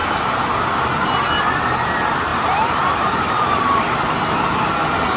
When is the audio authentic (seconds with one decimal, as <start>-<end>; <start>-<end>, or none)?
0.0-2.3; 4.1-5.2